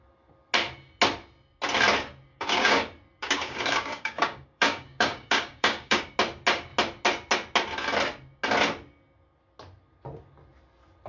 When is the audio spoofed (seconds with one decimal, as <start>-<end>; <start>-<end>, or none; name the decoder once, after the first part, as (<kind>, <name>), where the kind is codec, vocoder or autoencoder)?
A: 2.3-2.8 (codec, DAC); 3.2-6.0